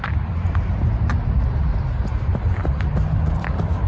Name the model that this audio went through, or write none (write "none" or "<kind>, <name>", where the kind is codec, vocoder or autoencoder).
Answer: none